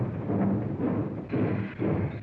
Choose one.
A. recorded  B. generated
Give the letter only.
A